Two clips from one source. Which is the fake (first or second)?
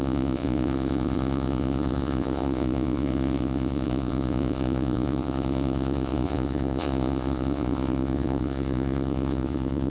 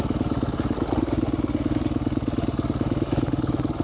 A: first